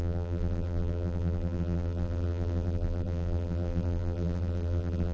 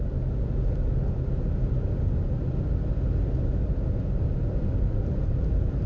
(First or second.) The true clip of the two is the second